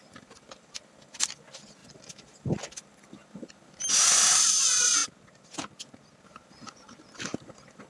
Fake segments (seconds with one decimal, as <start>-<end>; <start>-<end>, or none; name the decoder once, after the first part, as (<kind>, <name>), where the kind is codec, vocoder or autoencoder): none